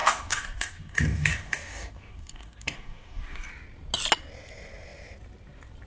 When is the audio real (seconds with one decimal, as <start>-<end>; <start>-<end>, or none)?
3.5-5.9